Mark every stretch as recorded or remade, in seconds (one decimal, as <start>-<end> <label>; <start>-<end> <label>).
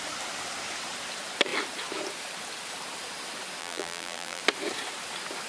0.0-3.6 recorded; 3.6-4.4 remade; 4.4-5.5 recorded